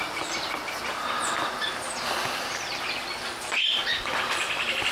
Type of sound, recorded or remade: remade